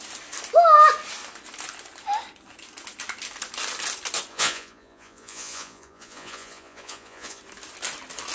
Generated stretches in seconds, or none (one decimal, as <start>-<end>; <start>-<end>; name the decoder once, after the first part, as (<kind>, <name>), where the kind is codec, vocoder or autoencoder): 4.3-7.4 (vocoder, Vocos)